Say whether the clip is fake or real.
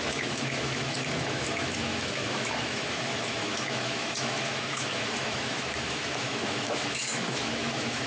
fake